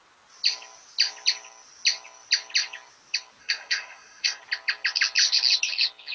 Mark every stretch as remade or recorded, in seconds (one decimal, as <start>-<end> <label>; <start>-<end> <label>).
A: 0.0-3.4 recorded; 3.4-4.4 remade; 4.4-6.1 recorded